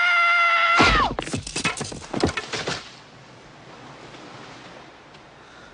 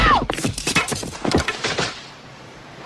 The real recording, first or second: first